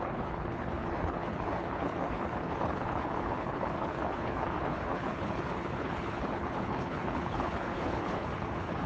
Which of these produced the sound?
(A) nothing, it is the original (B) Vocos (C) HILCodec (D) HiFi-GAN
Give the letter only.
C